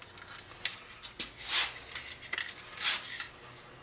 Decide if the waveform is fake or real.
real